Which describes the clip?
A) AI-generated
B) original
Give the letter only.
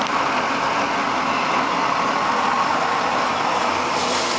B